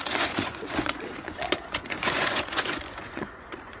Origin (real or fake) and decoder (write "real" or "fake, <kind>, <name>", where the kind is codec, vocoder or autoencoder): fake, vocoder, Vocos